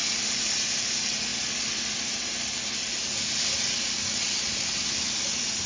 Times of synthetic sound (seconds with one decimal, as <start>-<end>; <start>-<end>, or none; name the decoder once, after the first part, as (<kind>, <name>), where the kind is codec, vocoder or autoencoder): none